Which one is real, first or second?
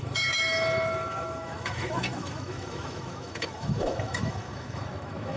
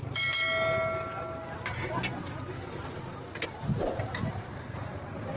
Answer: second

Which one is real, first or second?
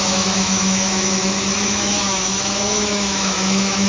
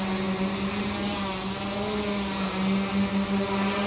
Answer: second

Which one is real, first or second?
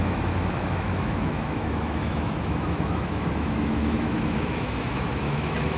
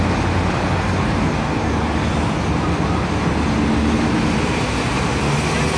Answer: second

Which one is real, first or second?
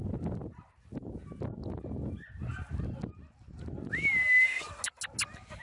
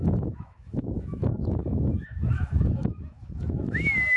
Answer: first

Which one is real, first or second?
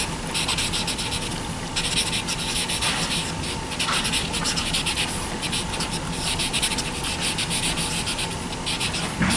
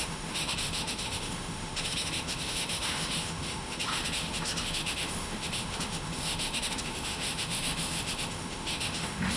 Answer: first